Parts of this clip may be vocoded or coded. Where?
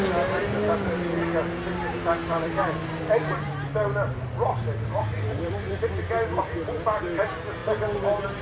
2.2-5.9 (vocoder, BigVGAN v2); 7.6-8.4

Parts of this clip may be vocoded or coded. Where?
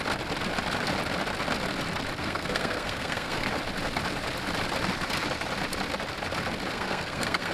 2.2-3.5 (codec, SNAC); 6.7-7.5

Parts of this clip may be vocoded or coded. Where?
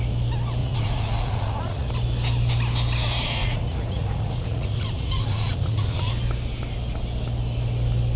0.6-1.9 (vocoder, Vocos); 3.4-6.1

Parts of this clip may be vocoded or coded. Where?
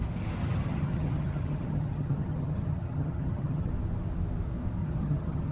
0.4-3.7 (vocoder, HiFi-GAN); 4.8-5.5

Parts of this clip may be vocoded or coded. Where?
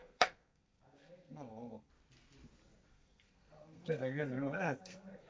0.0-1.9 (codec, SNAC); 2.9-5.3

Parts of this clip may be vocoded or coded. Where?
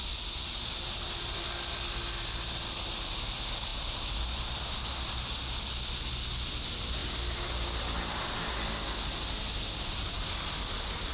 none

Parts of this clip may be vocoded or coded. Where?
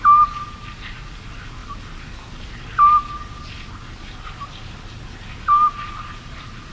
none